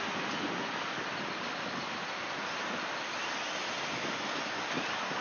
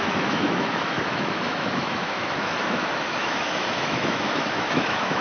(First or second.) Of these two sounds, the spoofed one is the second